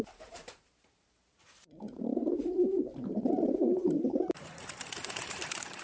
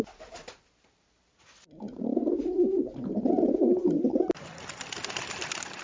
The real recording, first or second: second